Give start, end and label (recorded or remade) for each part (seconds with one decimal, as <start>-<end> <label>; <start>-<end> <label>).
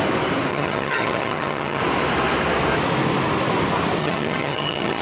0.0-0.5 recorded; 0.5-1.8 remade; 1.8-4.0 recorded; 4.0-5.0 remade